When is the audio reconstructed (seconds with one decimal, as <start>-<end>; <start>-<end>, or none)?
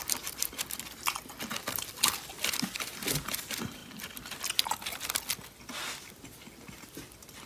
none